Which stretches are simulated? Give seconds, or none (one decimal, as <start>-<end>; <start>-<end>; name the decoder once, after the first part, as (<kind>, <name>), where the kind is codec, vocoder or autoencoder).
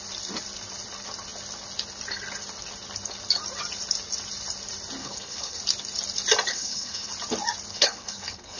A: 5.0-5.6 (codec, HILCodec); 6.5-7.1; 7.7-8.6